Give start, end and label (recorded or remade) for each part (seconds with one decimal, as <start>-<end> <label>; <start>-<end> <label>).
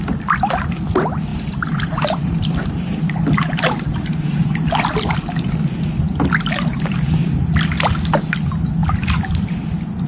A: 0.0-1.3 recorded; 1.3-4.8 remade; 4.8-10.1 recorded